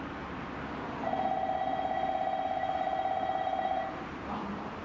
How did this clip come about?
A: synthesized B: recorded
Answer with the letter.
B